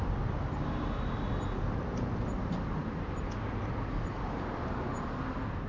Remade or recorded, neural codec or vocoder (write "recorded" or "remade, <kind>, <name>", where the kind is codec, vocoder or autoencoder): recorded